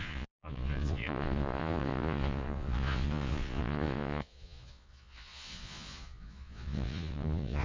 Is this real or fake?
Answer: fake